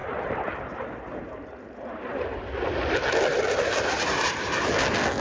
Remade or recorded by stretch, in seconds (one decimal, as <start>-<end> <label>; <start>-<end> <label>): 0.0-2.9 remade; 2.9-3.3 recorded; 3.3-4.6 remade; 4.6-5.2 recorded